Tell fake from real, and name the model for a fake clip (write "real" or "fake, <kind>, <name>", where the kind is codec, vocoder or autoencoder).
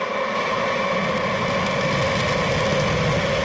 real